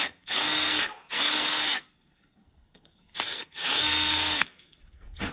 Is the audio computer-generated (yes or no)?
yes